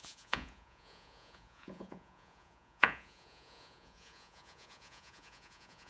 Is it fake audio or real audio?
fake